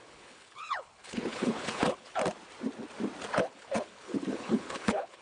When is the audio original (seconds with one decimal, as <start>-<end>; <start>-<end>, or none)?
2.2-3.3